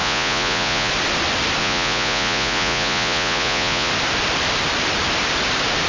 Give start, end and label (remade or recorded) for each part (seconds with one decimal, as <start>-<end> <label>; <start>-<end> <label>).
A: 0.0-0.9 remade; 0.9-1.6 recorded; 1.6-3.9 remade; 3.9-5.9 recorded